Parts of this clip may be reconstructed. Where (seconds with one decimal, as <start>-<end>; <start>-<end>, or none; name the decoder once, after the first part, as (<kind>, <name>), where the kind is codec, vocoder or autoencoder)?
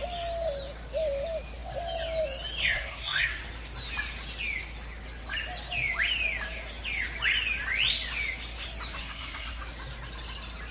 2.6-3.4 (codec, SNAC); 9.0-9.6